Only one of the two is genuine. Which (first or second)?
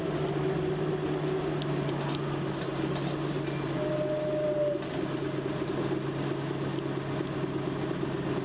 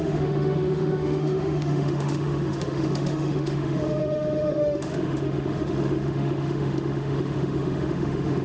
first